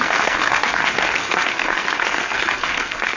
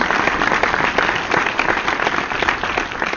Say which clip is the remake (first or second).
first